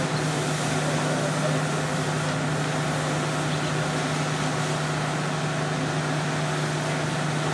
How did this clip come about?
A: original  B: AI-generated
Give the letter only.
A